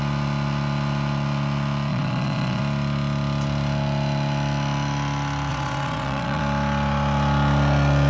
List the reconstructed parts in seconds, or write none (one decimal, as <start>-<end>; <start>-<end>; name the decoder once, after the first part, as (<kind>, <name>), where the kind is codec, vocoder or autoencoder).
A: 1.9-2.6 (vocoder, WaveNeXt); 5.5-6.4